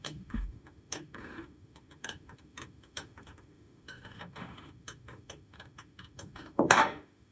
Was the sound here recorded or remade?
remade